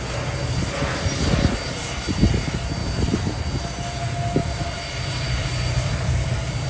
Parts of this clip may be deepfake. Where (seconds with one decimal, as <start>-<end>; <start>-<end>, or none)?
2.8-3.4; 4.4-6.7